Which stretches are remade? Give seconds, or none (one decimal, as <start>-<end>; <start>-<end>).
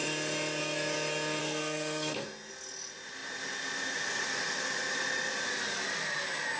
1.4-2.5